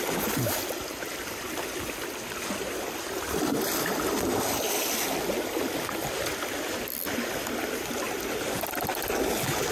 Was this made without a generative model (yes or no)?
yes